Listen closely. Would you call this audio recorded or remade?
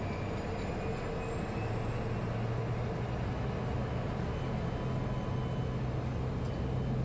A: recorded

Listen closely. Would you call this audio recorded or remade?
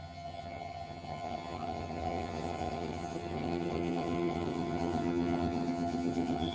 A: remade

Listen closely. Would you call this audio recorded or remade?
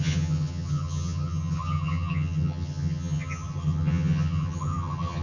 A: remade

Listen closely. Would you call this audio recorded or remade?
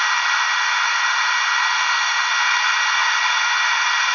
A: recorded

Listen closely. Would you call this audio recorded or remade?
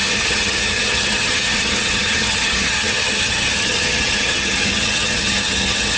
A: remade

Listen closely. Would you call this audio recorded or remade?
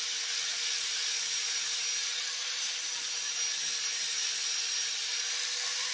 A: recorded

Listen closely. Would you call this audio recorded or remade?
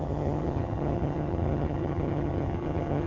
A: remade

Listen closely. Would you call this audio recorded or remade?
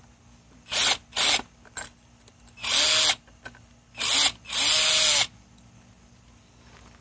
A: recorded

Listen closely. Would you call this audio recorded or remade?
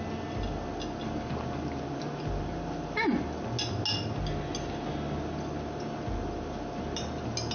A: recorded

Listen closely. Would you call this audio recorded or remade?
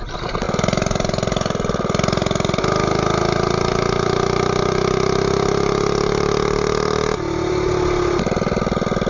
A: recorded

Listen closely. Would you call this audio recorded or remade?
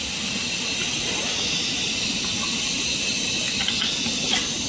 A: recorded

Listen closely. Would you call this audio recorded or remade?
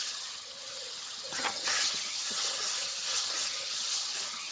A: remade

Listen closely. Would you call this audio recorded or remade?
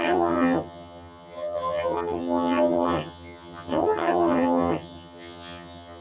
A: remade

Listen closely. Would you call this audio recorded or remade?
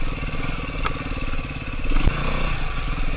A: recorded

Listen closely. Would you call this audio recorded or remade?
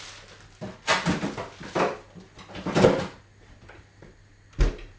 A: recorded